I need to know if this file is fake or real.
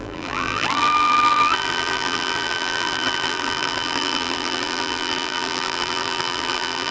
fake